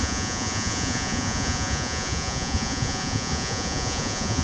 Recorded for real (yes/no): no